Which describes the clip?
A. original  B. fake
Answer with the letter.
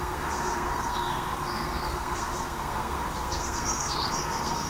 B